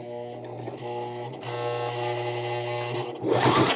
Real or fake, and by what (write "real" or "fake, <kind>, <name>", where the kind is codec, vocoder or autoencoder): real